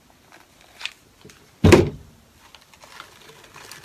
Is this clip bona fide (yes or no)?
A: yes